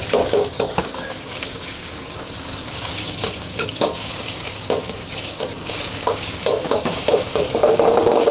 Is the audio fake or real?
fake